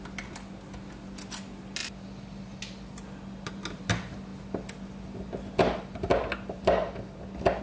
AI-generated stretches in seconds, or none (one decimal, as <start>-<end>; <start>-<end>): none

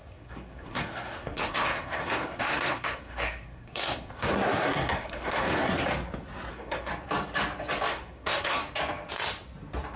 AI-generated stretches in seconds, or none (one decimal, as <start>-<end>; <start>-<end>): 0.0-5.8; 6.5-6.9; 7.9-8.6

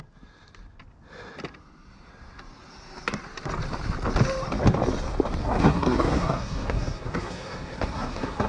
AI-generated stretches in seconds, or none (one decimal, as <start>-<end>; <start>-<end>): 5.4-8.5

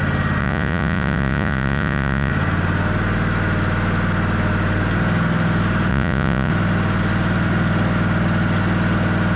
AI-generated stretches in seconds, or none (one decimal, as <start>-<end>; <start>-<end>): 0.4-2.3; 5.9-6.5

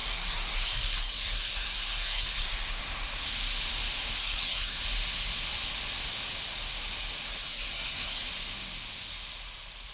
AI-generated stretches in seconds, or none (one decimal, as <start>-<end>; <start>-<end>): 0.0-2.8; 4.2-4.8; 7.2-8.2

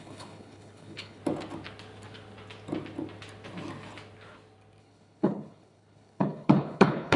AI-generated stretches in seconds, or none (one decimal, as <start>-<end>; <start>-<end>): 0.0-1.2; 4.8-7.2

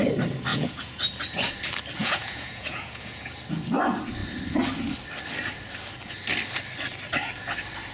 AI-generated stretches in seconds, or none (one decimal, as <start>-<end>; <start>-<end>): 0.5-1.1; 2.0-3.3

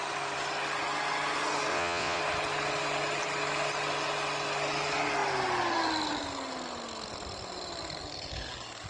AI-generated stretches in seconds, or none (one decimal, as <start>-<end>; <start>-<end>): 1.7-2.2